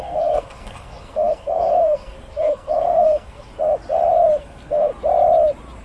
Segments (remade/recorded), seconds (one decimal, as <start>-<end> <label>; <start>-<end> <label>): 0.0-3.5 remade; 3.5-4.4 recorded; 4.4-4.9 remade; 4.9-5.8 recorded